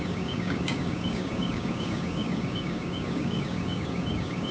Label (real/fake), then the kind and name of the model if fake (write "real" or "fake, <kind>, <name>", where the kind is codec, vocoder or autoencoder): fake, codec, DAC